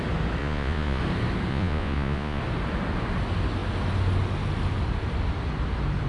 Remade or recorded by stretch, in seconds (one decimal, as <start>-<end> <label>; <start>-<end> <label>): 0.0-0.4 recorded; 0.4-1.0 remade; 1.0-1.5 recorded; 1.5-2.4 remade; 2.4-6.1 recorded